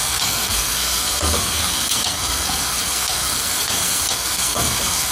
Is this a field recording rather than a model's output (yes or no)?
no